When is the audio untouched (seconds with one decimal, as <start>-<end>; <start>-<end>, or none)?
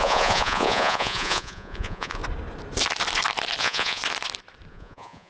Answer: 2.2-3.6; 4.0-4.7